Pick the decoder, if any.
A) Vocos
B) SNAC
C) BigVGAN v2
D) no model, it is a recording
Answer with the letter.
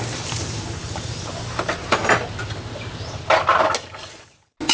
D